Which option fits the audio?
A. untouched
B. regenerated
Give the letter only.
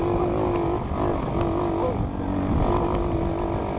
A